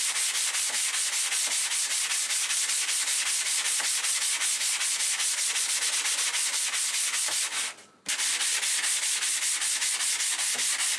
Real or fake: real